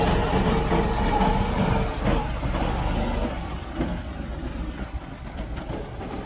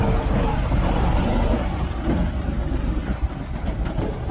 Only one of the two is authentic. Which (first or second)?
first